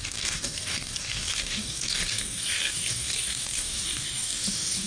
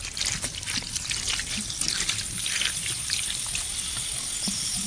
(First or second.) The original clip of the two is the second